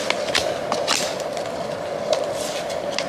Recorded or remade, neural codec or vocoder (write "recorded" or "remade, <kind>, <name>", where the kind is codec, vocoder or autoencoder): recorded